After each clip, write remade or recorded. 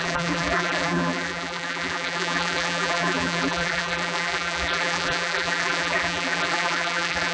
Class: remade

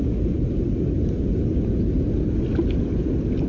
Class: recorded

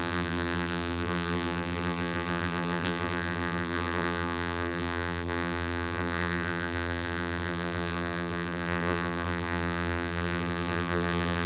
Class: remade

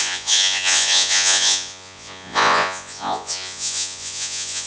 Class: remade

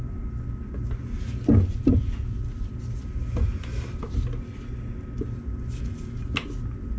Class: recorded